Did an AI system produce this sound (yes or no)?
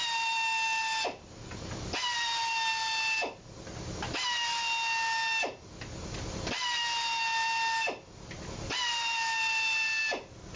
no